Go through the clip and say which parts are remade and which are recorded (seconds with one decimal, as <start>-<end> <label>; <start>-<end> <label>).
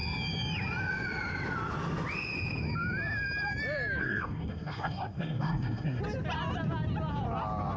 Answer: 0.0-4.0 recorded; 4.0-6.0 remade; 6.0-7.8 recorded